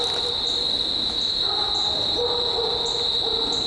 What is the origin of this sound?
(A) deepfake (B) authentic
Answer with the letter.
B